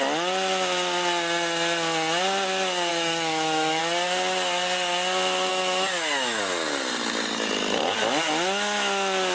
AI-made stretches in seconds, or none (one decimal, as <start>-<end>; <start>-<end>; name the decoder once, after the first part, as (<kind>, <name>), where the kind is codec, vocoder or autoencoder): 2.9-3.8 (autoencoder, DAC-VAE); 5.5-6.4